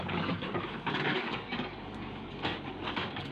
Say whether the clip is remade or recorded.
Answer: remade